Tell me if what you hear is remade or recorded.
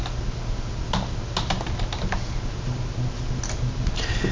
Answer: recorded